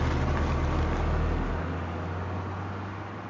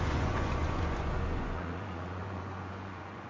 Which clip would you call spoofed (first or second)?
second